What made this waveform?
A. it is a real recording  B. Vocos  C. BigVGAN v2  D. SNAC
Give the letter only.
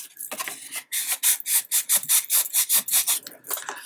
A